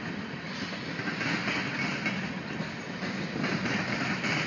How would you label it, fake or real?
real